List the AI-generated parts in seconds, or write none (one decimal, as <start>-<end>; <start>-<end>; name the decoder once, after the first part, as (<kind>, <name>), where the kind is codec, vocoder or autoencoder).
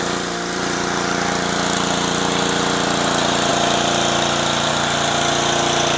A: 0.0-6.0 (vocoder, BigVGAN v2)